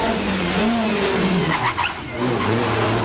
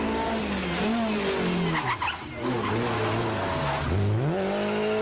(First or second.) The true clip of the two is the second